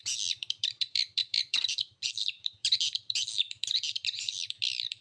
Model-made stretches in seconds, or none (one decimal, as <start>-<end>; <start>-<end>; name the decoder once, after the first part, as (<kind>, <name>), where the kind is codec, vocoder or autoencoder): 0.0-5.0 (vocoder, BigVGAN v2)